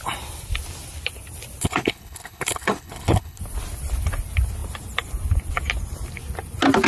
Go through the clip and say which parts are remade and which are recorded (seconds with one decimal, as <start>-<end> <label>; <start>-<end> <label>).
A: 0.0-1.6 recorded; 1.6-3.4 remade; 3.4-6.9 recorded